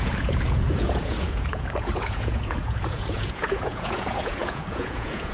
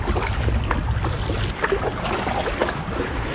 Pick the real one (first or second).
second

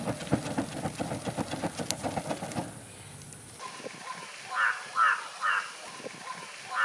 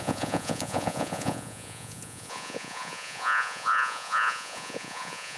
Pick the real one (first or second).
first